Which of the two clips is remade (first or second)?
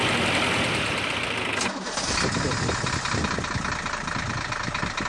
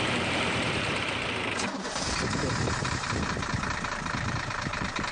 second